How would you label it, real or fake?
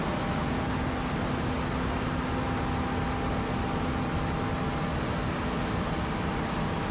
real